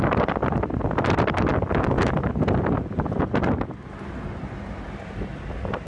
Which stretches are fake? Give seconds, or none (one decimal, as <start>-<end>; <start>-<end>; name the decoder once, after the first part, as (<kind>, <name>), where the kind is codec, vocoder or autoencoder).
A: none